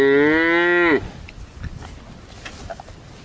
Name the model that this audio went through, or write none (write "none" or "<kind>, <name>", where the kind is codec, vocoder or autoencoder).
none